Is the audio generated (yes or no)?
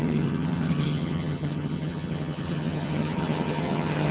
yes